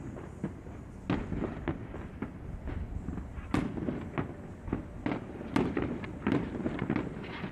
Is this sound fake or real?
real